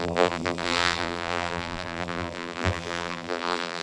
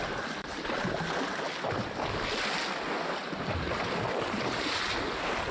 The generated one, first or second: first